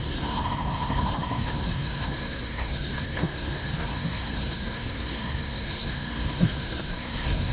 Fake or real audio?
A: fake